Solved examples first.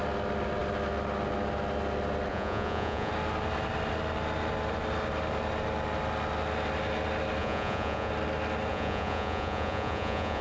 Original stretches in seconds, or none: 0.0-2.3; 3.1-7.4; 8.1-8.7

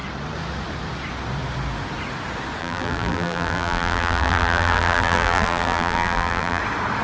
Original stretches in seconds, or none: 0.0-2.6; 6.6-7.0

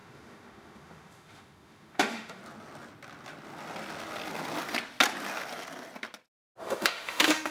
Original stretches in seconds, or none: 2.4-6.6

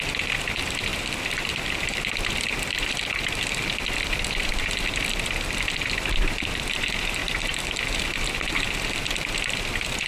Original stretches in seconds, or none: 0.0-0.9; 5.2-7.2; 7.8-10.1